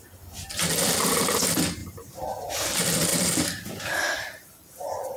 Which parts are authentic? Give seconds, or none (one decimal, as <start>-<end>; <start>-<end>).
1.8-2.5